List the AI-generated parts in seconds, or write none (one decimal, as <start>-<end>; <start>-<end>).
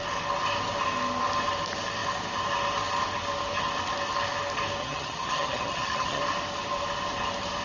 4.8-6.2